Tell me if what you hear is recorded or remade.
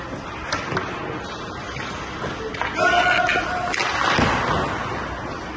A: recorded